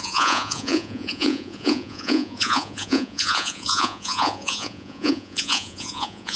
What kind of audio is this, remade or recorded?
remade